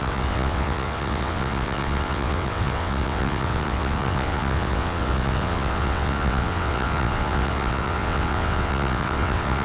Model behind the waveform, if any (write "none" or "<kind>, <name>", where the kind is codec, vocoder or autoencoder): vocoder, WaveNeXt